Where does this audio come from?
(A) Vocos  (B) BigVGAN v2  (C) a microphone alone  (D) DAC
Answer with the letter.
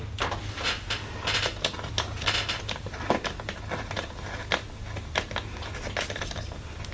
C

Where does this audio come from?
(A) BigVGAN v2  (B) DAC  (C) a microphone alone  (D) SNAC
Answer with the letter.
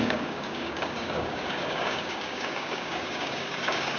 B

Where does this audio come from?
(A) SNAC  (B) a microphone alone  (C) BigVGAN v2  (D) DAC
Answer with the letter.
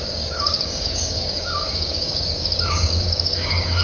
D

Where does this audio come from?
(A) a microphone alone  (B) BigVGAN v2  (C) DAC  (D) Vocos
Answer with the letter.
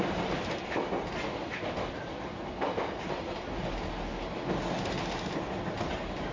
A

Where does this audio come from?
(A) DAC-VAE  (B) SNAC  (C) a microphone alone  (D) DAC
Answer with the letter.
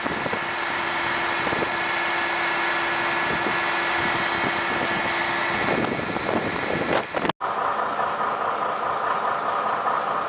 C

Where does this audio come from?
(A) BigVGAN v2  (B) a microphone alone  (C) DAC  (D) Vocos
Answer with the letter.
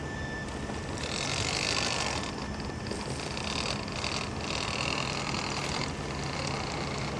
B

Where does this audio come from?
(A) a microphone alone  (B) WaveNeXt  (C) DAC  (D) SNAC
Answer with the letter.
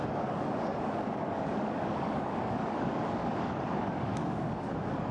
C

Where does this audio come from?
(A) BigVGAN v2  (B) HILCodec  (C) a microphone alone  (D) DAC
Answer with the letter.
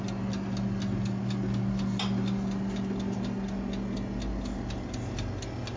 C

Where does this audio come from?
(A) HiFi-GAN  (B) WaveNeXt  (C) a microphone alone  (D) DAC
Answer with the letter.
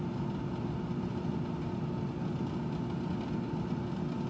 C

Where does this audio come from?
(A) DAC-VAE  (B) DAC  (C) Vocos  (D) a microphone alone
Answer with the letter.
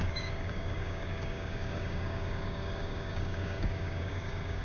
B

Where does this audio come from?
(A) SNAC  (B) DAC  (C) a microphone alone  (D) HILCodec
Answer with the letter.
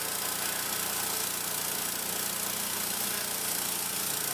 C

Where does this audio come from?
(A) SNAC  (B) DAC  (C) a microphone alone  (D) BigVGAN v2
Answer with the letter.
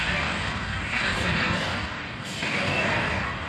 B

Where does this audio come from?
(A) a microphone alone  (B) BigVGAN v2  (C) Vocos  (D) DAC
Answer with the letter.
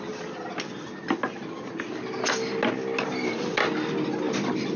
A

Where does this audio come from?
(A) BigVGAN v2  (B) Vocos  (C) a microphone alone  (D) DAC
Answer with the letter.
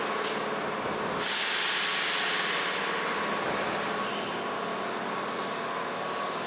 C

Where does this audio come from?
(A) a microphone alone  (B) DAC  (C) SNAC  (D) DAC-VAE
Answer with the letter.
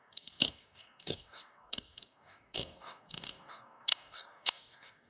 B